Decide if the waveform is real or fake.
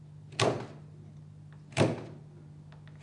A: real